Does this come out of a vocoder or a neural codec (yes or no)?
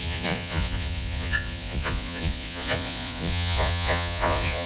yes